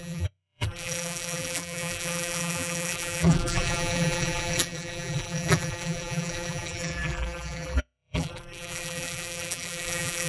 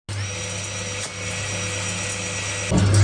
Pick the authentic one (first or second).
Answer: second